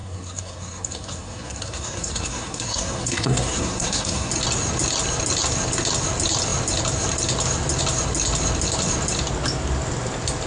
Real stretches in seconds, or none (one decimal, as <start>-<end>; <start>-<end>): 4.3-10.5